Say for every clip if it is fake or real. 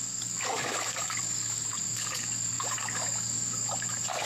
fake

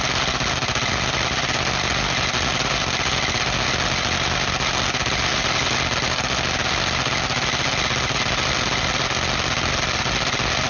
real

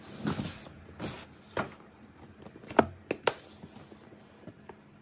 real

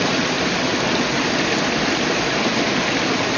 real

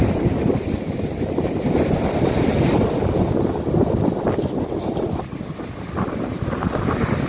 real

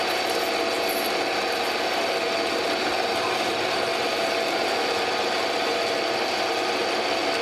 real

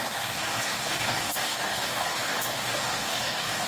fake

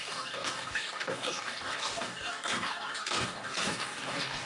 fake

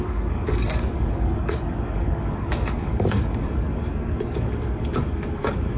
fake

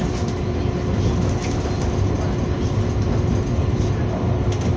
real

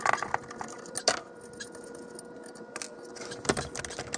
real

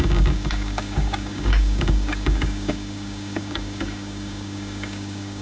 fake